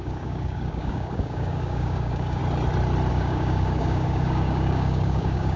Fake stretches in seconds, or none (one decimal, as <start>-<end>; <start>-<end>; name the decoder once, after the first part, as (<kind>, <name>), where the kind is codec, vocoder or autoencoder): 0.0-2.4 (codec, DAC); 3.1-5.6